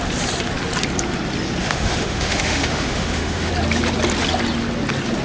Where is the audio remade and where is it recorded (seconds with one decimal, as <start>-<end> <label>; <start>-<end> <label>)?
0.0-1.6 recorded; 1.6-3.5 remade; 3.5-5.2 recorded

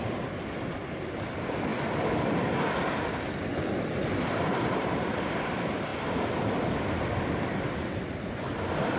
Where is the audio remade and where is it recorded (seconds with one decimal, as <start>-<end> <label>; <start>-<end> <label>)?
0.0-9.0 recorded

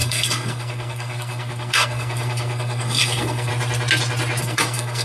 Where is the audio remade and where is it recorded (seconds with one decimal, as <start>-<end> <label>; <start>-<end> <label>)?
0.0-3.5 remade; 3.5-4.4 recorded; 4.4-5.0 remade

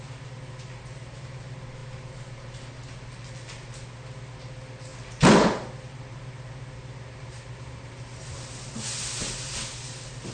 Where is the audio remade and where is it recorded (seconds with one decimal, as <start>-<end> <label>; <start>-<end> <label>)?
0.0-10.3 recorded

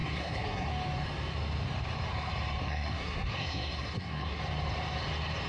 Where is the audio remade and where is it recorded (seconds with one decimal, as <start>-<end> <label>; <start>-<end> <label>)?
0.0-0.7 remade; 0.7-2.6 recorded; 2.6-4.4 remade; 4.4-5.5 recorded

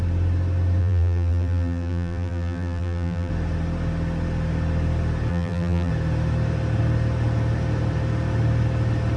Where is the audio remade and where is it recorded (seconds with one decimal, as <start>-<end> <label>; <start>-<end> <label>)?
0.0-0.8 recorded; 0.8-3.3 remade; 3.3-5.3 recorded; 5.3-5.9 remade; 5.9-9.2 recorded